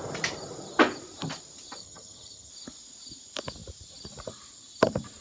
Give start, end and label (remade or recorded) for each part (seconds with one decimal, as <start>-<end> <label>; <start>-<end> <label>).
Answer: 0.0-1.8 recorded; 1.8-2.5 remade; 2.5-5.2 recorded